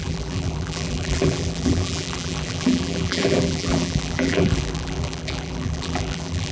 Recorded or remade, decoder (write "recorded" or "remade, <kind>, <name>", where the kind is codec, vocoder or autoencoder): remade, vocoder, BigVGAN v2